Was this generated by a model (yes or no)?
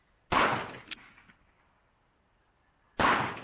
no